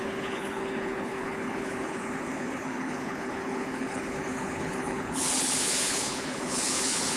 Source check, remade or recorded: remade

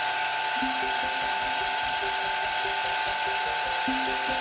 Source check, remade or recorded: recorded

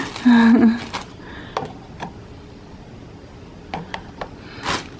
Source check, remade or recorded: recorded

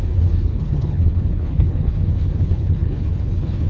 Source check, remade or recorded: remade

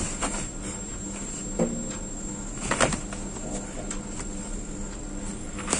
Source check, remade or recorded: recorded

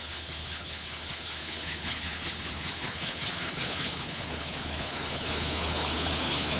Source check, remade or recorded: remade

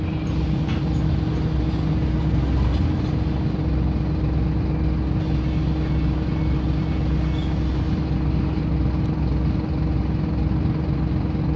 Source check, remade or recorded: recorded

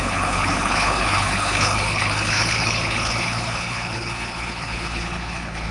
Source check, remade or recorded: remade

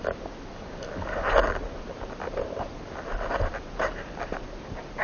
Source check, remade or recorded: recorded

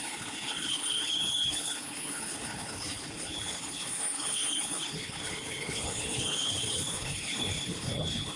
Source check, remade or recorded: remade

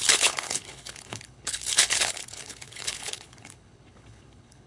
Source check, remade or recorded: remade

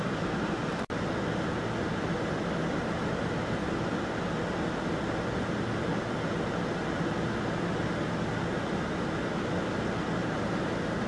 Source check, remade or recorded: recorded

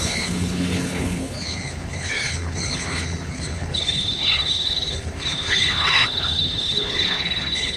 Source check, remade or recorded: remade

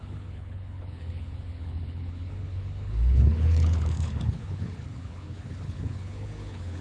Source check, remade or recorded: remade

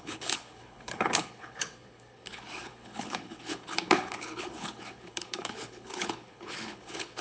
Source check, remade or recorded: remade